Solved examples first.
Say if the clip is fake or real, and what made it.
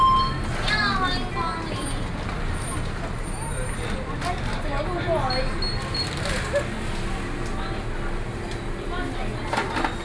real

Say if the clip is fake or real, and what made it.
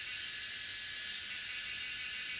real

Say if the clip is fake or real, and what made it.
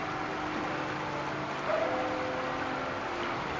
real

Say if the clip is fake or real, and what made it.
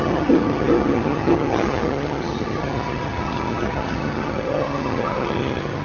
fake, vocoder, HiFi-GAN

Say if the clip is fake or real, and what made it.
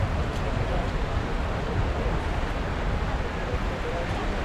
real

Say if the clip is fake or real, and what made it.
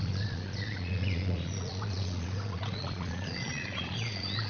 fake, vocoder, Vocos